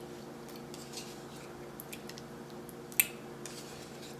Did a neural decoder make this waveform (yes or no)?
no